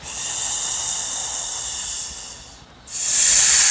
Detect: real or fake real